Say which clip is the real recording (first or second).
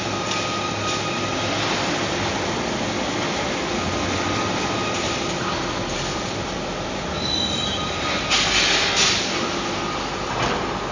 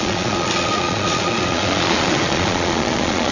first